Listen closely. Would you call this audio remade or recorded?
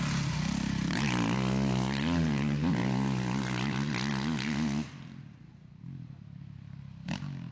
recorded